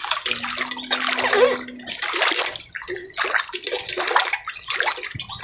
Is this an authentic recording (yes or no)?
yes